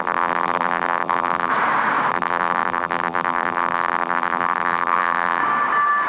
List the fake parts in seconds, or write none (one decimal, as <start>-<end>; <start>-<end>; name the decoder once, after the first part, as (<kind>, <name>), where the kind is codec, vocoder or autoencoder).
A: 0.0-1.5 (vocoder, BigVGAN v2); 2.1-5.4